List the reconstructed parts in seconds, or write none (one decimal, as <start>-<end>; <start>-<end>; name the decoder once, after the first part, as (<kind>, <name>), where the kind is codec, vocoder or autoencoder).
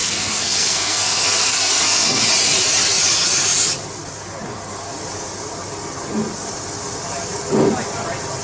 0.0-2.2 (codec, SNAC)